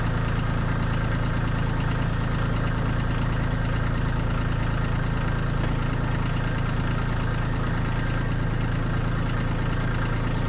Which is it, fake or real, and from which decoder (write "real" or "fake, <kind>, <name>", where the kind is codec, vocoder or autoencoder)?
real